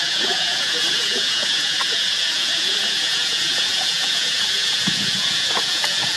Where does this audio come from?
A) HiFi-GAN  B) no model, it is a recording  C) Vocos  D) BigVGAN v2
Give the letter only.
C